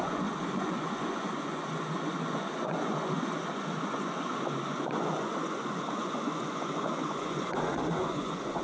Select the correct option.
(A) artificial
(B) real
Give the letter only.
A